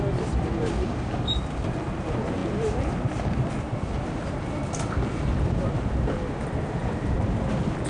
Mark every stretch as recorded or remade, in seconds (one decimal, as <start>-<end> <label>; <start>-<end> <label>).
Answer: 0.0-7.9 recorded